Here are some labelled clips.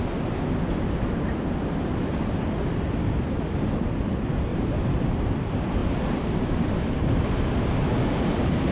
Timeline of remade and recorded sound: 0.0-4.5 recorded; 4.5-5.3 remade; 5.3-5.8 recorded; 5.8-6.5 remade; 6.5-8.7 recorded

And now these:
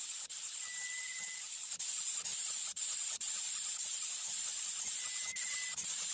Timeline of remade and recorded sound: 0.0-2.3 recorded; 2.3-2.8 remade; 2.8-6.1 recorded

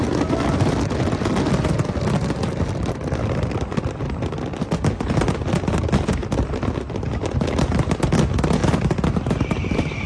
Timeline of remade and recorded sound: 0.0-4.3 remade; 4.3-8.6 recorded; 8.6-9.1 remade; 9.1-10.1 recorded

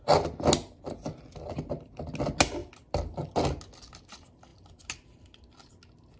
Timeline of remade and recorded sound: 0.0-6.2 recorded